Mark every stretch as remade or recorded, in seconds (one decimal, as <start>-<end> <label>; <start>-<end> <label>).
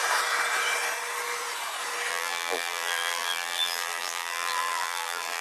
0.0-2.1 recorded; 2.1-5.4 remade